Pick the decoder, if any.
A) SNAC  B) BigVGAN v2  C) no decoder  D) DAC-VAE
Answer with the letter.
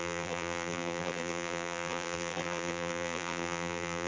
B